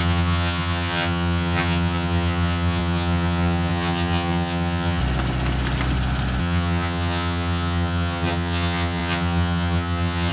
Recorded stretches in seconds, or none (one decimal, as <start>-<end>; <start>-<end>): 5.0-6.4